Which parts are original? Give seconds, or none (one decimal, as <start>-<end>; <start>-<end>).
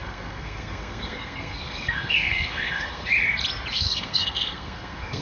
3.1-3.7